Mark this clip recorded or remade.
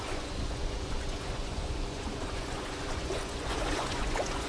remade